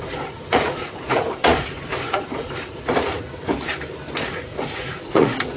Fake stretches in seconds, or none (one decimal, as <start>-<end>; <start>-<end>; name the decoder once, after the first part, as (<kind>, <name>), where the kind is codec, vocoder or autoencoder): 0.0-3.5 (vocoder, Vocos); 4.2-5.6